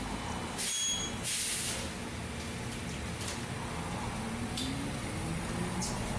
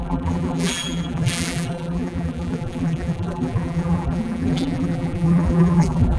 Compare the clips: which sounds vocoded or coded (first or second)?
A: second